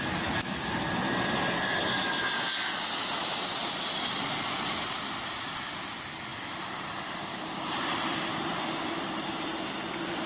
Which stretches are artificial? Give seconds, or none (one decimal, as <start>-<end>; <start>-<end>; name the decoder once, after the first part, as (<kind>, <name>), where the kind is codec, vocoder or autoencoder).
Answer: 6.3-9.2 (vocoder, BigVGAN v2)